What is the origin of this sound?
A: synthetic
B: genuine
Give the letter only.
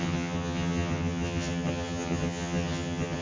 A